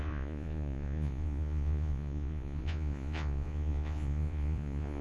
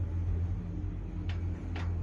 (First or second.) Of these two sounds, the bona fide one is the second